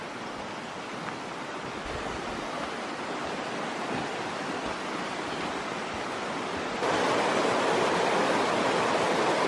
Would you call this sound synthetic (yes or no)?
no